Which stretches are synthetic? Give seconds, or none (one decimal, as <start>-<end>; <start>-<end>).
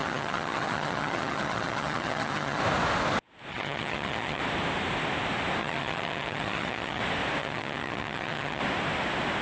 0.0-2.6; 3.5-4.4; 5.6-7.0; 7.4-8.6